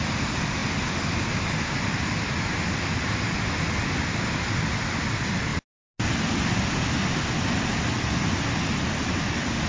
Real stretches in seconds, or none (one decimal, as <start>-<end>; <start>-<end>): 0.0-9.7